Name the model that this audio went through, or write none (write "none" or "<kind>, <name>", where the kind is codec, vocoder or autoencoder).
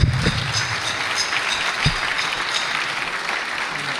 vocoder, BigVGAN v2